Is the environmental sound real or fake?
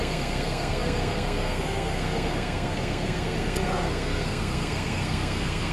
fake